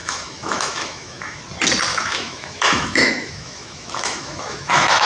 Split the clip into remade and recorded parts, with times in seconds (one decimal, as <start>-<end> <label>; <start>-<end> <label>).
0.0-1.4 remade; 1.4-1.9 recorded; 1.9-5.1 remade